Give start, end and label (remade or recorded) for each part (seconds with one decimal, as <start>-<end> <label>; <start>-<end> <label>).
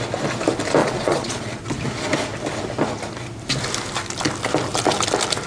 0.0-0.8 recorded; 0.8-1.6 remade; 1.6-5.5 recorded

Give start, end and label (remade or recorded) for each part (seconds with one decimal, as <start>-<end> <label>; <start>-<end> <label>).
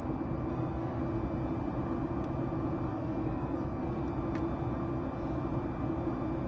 0.0-0.5 recorded; 0.5-1.0 remade; 1.0-2.9 recorded; 2.9-4.0 remade; 4.0-6.5 recorded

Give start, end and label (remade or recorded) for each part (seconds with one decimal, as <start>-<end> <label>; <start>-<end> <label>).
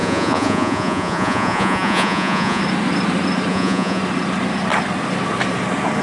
0.0-2.6 remade; 2.6-3.5 recorded; 3.5-4.0 remade; 4.0-6.0 recorded